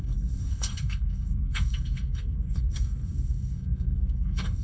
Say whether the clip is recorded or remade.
remade